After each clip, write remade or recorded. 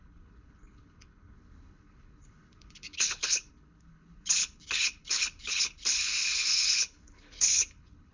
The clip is remade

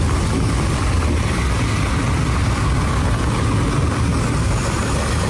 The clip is recorded